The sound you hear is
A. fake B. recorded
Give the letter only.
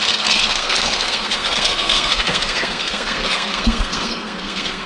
A